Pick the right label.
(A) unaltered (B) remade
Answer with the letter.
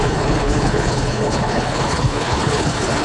B